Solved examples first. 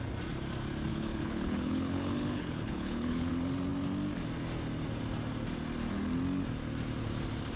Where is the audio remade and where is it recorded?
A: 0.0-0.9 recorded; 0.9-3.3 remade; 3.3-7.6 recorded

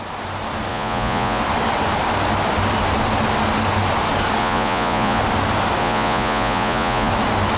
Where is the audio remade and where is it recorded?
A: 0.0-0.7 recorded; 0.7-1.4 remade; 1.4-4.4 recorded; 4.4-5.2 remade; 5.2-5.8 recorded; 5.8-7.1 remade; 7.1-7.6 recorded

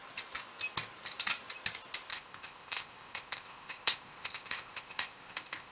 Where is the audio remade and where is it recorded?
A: 0.0-2.1 recorded; 2.1-5.7 remade

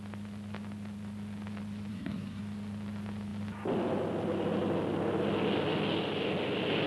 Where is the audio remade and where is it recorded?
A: 0.0-1.9 recorded; 1.9-2.4 remade; 2.4-6.9 recorded

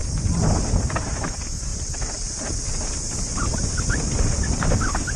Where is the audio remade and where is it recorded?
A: 0.0-5.2 recorded

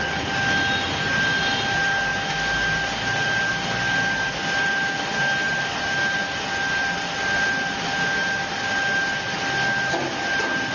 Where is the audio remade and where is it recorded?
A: 0.0-10.7 recorded